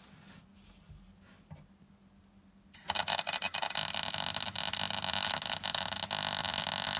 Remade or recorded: recorded